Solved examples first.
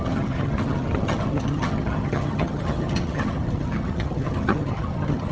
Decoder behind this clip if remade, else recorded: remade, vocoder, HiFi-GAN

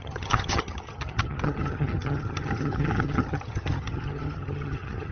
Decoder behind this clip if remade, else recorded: remade, vocoder, HiFi-GAN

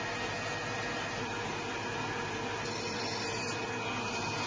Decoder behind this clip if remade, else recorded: recorded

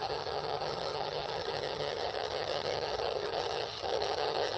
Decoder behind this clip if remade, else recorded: remade, vocoder, HiFi-GAN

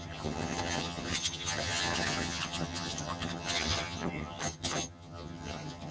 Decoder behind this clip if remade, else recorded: remade, vocoder, HiFi-GAN